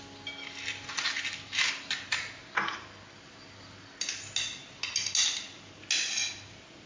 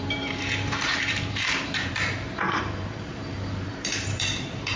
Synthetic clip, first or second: second